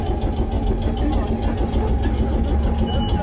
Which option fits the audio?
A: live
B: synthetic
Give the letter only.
A